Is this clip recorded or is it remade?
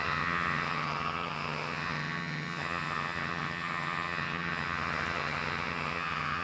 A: remade